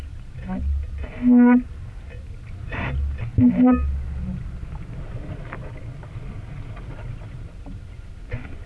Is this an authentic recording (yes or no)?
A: yes